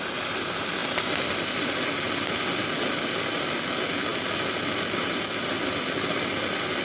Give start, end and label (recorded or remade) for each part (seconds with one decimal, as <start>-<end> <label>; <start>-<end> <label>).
0.0-6.8 recorded